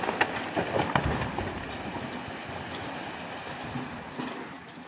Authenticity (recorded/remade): recorded